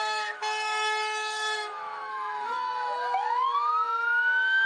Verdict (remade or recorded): remade